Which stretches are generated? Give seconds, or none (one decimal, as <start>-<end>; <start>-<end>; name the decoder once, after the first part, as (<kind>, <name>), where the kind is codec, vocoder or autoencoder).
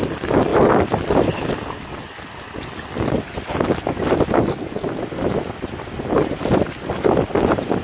none